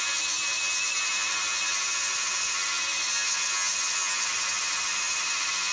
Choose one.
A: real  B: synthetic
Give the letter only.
A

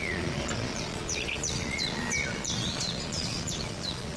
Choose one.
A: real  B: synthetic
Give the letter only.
B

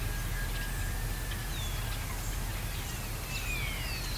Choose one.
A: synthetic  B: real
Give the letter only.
B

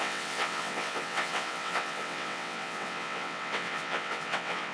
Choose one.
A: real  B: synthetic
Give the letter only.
B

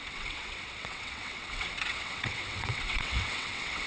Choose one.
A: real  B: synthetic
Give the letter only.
B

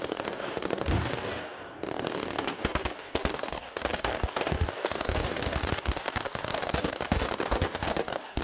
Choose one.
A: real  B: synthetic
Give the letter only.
B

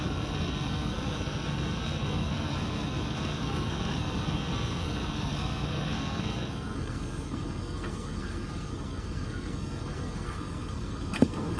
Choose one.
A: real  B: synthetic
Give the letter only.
B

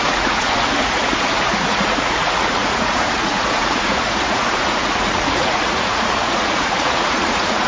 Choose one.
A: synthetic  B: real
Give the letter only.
A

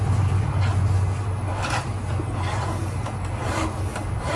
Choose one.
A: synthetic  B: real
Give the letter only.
A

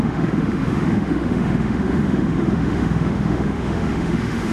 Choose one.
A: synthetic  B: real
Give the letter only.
A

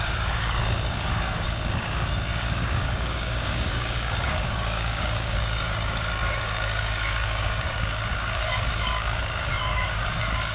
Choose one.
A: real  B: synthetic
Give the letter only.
B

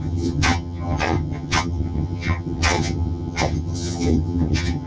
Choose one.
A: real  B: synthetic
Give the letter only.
B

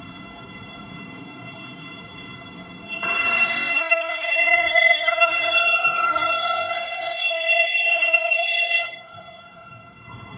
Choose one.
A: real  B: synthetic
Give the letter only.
B